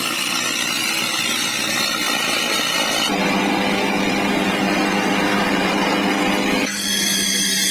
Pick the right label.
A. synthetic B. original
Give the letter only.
B